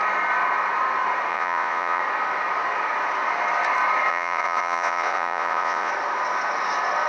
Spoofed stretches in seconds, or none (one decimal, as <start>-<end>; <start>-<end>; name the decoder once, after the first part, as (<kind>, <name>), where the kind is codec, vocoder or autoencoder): 1.3-2.0 (vocoder, Vocos); 4.1-5.9